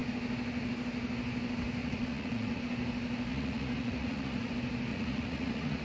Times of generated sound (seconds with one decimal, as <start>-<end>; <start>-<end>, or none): 1.8-2.6; 3.3-4.5; 4.9-5.8